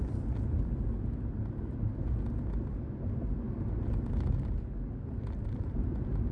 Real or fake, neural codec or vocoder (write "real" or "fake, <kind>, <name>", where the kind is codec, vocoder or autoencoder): real